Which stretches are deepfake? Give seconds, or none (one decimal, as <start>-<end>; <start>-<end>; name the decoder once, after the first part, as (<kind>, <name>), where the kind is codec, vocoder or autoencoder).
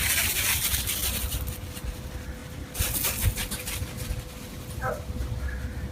none